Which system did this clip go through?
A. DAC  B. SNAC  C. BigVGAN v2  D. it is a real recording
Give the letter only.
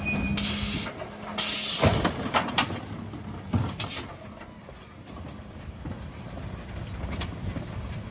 D